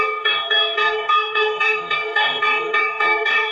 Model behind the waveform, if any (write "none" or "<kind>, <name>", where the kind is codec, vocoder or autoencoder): codec, DAC